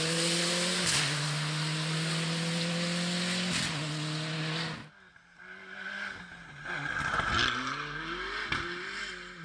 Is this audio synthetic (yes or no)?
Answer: no